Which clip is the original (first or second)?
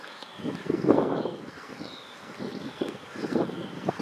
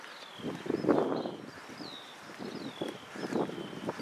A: second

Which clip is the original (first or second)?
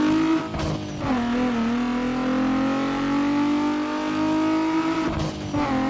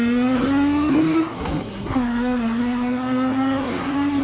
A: first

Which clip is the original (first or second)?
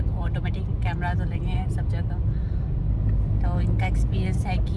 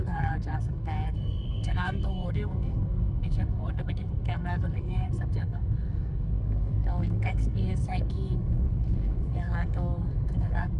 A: first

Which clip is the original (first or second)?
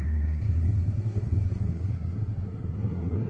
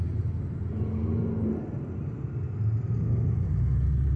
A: second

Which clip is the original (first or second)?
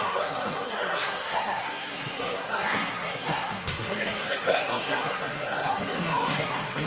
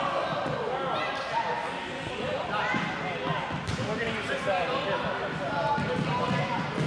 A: second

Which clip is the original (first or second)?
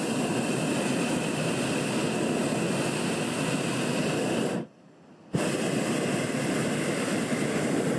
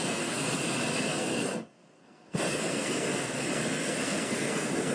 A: first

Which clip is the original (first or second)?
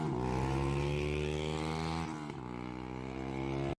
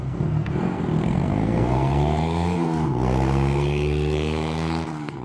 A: first